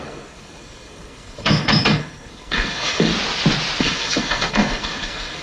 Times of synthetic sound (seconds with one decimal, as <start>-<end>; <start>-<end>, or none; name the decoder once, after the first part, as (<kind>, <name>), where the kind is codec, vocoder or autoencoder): 0.0-3.1 (codec, SNAC); 3.8-5.4